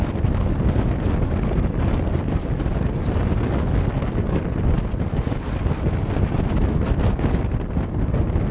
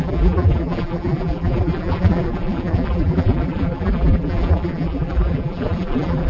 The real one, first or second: first